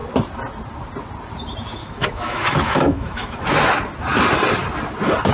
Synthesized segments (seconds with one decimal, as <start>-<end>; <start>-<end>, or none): 1.8-3.4